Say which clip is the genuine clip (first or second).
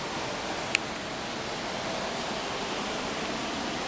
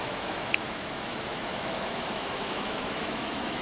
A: first